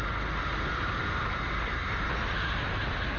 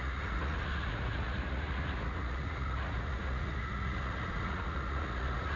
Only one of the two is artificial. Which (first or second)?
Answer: second